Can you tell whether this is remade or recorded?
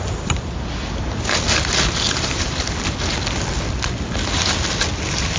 recorded